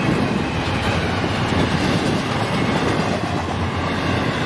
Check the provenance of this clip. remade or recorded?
recorded